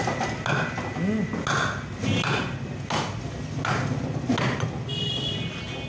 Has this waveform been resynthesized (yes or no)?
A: no